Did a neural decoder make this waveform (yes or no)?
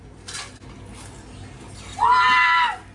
no